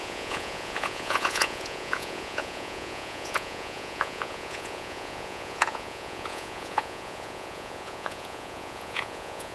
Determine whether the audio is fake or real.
fake